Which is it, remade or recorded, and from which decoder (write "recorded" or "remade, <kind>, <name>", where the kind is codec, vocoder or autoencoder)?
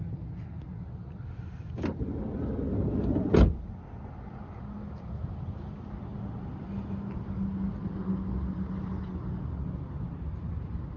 recorded